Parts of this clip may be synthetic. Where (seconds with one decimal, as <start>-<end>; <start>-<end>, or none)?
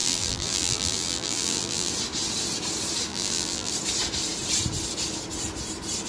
0.0-1.9; 3.1-3.7